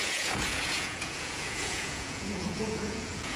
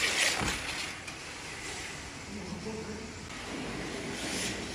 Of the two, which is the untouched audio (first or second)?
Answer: second